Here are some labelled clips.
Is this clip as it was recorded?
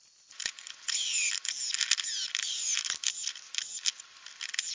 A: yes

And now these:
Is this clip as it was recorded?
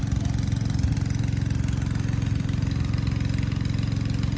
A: yes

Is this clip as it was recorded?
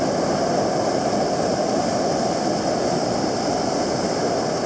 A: yes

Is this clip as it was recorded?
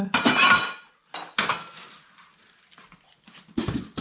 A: yes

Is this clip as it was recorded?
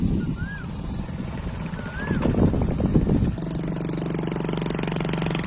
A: yes